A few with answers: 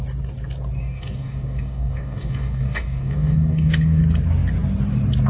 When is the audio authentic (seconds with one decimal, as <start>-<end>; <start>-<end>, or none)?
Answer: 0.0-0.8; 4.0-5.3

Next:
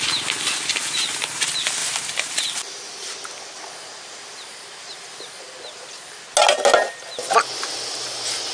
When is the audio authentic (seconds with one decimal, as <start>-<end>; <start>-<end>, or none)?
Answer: 0.0-0.8; 1.4-1.8; 2.9-8.5

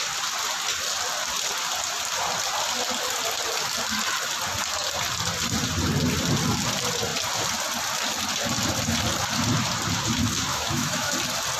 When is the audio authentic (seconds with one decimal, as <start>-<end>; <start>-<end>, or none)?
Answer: 0.0-10.5; 11.1-11.6

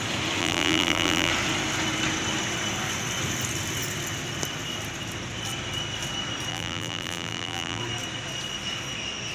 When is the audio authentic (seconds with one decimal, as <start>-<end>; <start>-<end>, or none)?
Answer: 0.0-0.4; 1.3-6.5; 7.8-9.3

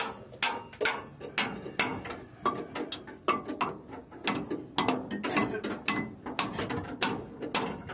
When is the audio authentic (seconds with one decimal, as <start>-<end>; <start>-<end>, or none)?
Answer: 0.0-7.9

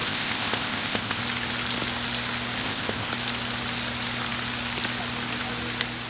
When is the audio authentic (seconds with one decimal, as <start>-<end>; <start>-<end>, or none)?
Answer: 1.2-2.6; 3.1-6.1